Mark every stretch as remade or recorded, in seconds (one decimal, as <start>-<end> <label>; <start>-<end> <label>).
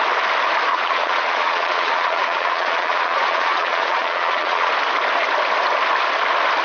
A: 0.0-0.7 recorded; 0.7-4.7 remade; 4.7-6.6 recorded